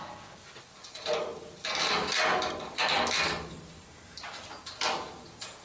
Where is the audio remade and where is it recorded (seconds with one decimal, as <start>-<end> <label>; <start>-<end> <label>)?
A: 0.0-5.6 recorded

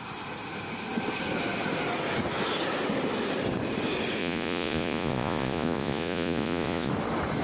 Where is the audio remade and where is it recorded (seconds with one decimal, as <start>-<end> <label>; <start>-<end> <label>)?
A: 0.0-4.2 recorded; 4.2-6.9 remade; 6.9-7.4 recorded

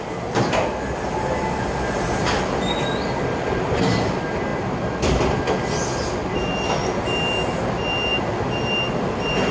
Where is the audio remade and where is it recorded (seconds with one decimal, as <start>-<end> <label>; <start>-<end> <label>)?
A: 0.0-9.5 recorded

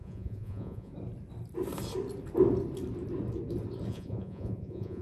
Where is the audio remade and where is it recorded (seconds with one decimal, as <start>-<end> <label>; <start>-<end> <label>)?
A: 0.0-0.9 remade; 0.9-3.9 recorded; 3.9-5.0 remade

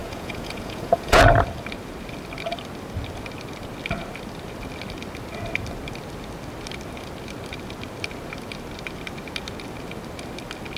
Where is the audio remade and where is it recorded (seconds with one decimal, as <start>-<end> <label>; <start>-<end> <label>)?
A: 0.0-1.3 remade; 1.3-10.8 recorded